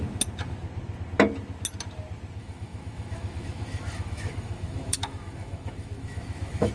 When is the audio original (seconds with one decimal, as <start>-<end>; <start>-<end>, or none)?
0.0-2.4